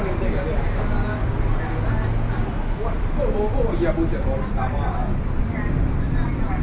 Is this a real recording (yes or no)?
yes